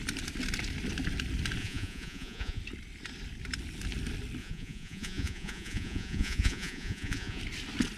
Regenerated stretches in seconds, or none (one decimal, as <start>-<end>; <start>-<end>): 1.6-2.6; 4.4-7.4